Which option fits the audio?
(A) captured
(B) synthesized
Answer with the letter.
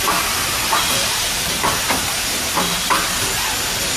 B